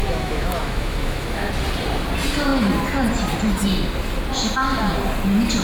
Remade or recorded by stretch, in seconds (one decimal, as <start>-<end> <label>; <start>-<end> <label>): 0.0-1.5 remade; 1.5-5.6 recorded